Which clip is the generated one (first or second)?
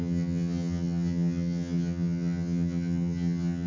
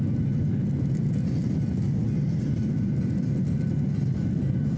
first